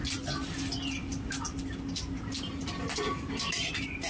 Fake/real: real